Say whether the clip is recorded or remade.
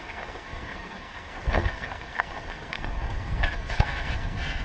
remade